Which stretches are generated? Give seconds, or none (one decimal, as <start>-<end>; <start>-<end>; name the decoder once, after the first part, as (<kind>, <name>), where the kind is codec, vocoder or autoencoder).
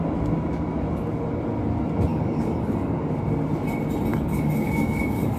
2.1-3.2 (codec, DAC); 4.1-5.4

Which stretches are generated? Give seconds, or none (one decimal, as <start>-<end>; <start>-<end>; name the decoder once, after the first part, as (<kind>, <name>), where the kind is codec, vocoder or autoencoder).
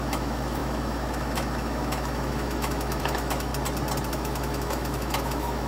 0.0-3.5 (autoencoder, DAC-VAE); 4.1-5.7